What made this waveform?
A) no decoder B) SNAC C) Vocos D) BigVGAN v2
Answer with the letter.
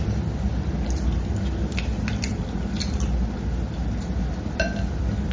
A